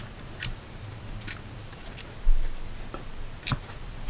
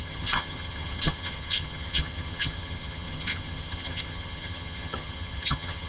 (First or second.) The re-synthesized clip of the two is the second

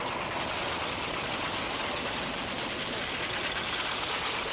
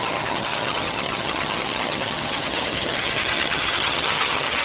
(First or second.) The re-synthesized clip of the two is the second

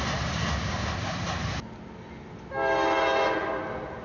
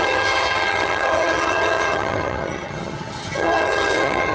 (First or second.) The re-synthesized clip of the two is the second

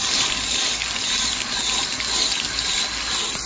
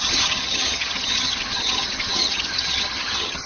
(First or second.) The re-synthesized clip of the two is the second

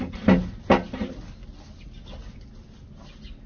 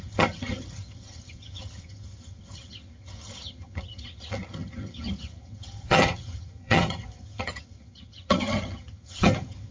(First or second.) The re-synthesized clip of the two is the second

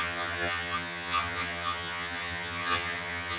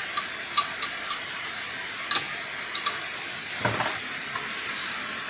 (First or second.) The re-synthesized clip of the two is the first